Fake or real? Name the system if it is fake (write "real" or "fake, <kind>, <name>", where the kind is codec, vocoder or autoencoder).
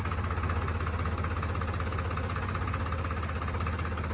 real